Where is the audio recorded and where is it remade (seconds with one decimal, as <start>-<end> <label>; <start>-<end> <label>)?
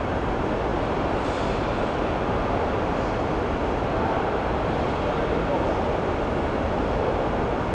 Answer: 0.0-7.7 recorded